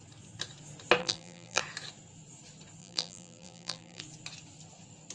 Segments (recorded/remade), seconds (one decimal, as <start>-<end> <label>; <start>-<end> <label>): 0.0-1.0 recorded; 1.0-1.6 remade; 1.6-2.8 recorded; 2.8-4.0 remade; 4.0-5.1 recorded